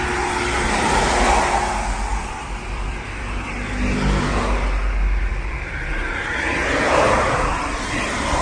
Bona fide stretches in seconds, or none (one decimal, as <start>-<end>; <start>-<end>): 0.0-2.1; 3.5-5.3; 5.9-8.4